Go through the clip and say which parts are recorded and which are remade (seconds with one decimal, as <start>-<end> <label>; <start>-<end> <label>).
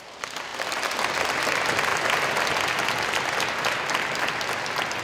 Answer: 0.0-0.5 recorded; 0.5-1.3 remade; 1.3-1.9 recorded; 1.9-2.5 remade; 2.5-5.0 recorded